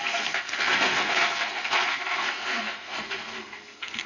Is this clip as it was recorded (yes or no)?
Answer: no